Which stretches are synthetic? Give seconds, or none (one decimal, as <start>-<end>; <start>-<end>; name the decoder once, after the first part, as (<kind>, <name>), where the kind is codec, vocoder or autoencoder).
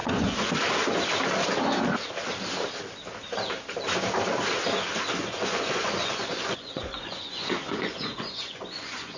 0.0-0.5 (vocoder, Vocos); 5.2-9.2